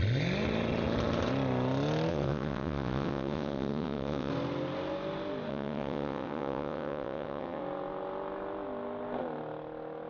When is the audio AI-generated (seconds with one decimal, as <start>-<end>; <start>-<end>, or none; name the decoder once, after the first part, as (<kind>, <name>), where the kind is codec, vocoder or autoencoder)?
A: 2.1-4.3 (vocoder, WaveNeXt); 5.5-7.6